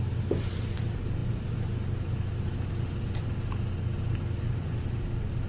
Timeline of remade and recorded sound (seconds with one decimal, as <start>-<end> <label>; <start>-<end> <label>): 0.0-5.5 recorded